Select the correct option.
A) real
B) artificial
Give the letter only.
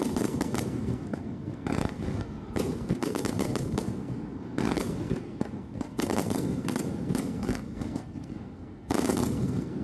B